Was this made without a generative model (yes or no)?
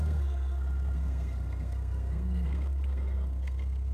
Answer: no